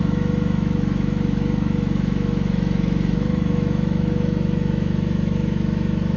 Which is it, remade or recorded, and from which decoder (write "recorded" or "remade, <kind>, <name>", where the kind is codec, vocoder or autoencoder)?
remade, autoencoder, DAC-VAE